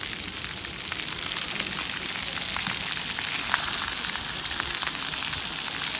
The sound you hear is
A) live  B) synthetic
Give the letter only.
A